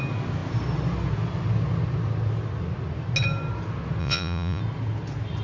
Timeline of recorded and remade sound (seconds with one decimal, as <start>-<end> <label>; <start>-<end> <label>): 0.0-4.0 recorded; 4.0-4.6 remade; 4.6-5.4 recorded